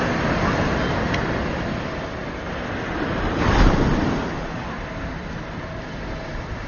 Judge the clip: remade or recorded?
recorded